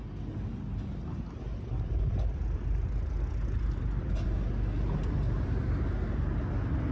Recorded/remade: recorded